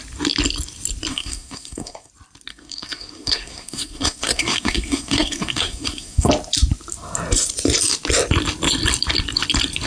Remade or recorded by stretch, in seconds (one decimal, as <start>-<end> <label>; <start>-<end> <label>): 0.0-1.1 recorded; 1.1-2.1 remade; 2.1-2.5 recorded; 2.5-6.3 remade; 6.3-9.9 recorded